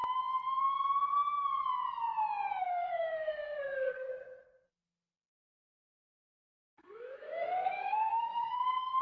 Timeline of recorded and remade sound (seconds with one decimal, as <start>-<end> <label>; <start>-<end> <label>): 0.0-2.6 recorded; 2.6-4.1 remade; 4.1-4.7 recorded; 4.7-9.0 remade

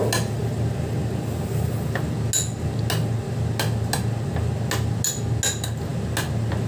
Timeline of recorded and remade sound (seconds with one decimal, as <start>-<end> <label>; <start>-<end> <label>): 0.0-6.7 recorded

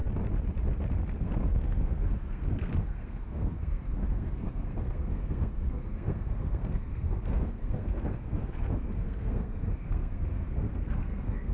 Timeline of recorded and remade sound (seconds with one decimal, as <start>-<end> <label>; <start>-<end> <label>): 0.0-1.2 recorded; 1.2-11.5 remade

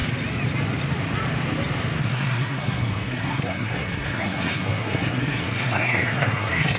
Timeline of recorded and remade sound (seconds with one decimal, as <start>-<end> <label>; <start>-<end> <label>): 0.0-2.0 recorded; 2.0-6.8 remade

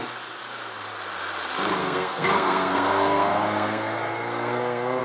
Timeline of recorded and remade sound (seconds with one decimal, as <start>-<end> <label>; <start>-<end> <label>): 0.0-1.8 recorded; 1.8-5.0 remade